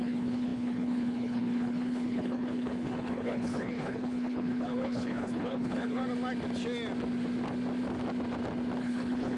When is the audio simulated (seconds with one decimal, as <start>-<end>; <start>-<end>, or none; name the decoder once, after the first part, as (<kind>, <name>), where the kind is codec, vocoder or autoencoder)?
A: 0.0-6.0 (codec, HILCodec); 8.8-9.4